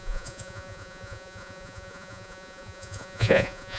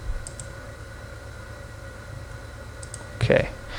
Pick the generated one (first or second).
first